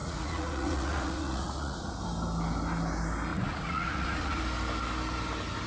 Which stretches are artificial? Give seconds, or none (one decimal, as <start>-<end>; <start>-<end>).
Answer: 0.0-2.0; 3.3-4.4